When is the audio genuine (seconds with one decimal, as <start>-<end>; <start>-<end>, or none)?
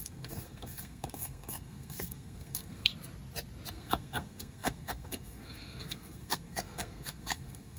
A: 2.9-3.7